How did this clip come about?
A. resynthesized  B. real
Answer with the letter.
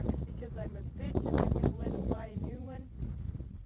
A